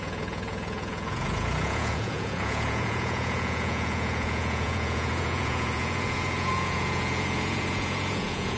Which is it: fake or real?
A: fake